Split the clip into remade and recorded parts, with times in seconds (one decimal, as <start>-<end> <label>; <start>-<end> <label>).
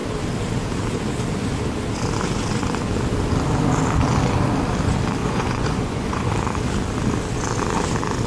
0.0-5.2 recorded; 5.2-6.3 remade; 6.3-8.3 recorded